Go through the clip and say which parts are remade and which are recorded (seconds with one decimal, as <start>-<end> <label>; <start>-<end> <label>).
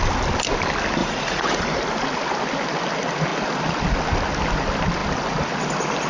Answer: 0.0-1.0 recorded; 1.0-1.6 remade; 1.6-6.1 recorded